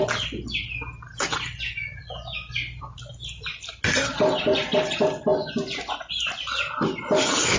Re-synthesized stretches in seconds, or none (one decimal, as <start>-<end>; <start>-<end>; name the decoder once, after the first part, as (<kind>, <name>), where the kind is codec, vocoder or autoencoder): none